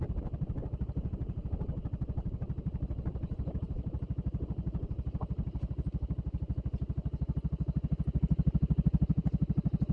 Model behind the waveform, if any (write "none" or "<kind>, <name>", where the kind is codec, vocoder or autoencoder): none